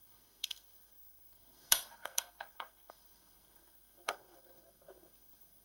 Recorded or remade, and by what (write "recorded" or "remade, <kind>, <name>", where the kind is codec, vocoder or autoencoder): remade, codec, SNAC